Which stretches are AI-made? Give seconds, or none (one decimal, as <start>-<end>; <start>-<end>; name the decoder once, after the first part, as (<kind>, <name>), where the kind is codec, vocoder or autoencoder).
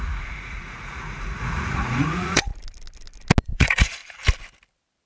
0.0-2.5 (vocoder, Vocos); 3.4-4.0